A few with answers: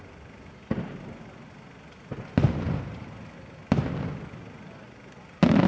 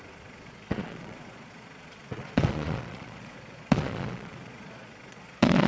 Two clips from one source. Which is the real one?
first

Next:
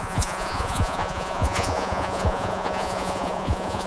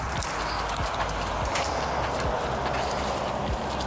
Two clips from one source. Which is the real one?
second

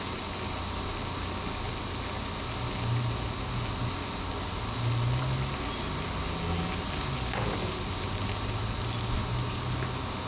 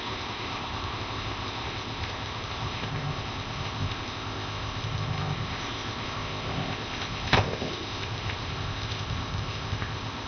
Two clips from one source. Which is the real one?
first